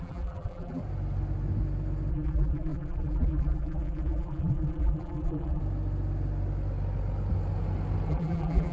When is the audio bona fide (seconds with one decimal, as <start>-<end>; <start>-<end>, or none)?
0.8-2.1; 5.6-8.1

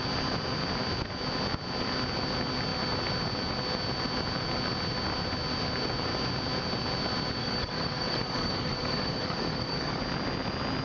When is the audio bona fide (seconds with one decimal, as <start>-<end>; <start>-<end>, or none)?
0.0-7.4; 10.0-10.8